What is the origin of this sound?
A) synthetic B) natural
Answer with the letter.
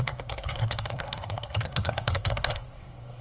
A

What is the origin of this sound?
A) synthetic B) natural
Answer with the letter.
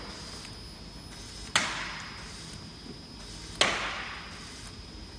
B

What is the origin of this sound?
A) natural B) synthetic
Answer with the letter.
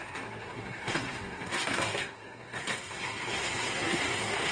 B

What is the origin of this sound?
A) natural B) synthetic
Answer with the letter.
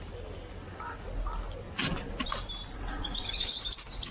A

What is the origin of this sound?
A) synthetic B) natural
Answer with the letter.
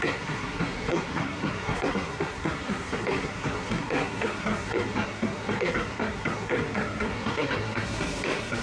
A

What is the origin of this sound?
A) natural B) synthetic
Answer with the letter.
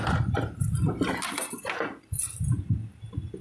A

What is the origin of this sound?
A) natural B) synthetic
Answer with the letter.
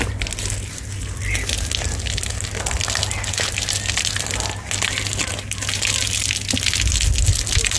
A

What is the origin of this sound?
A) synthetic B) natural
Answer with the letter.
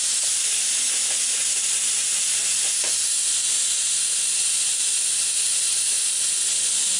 B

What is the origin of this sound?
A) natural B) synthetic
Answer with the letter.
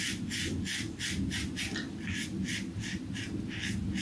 A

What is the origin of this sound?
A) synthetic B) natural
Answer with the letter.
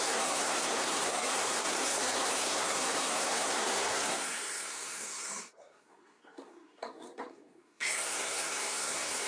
A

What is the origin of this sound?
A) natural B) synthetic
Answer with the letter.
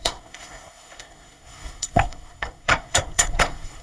B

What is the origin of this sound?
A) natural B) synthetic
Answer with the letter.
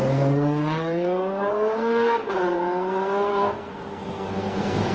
B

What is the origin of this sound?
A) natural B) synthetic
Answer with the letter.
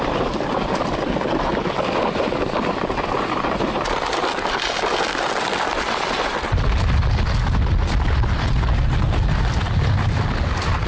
A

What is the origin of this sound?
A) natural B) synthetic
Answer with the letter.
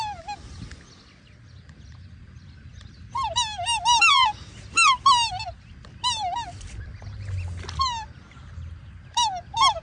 A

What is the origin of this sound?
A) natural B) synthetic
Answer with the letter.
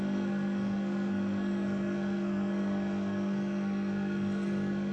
B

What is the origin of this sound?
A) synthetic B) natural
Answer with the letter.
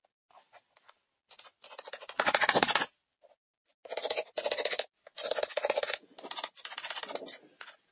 B